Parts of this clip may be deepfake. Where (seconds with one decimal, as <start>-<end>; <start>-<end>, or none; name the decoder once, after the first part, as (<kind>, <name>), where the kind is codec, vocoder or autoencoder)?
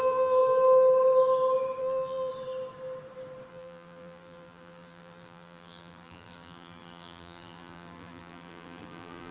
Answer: 0.0-0.4 (vocoder, BigVGAN v2); 1.8-2.3; 3.5-9.3